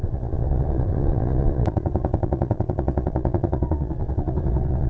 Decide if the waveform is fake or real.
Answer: fake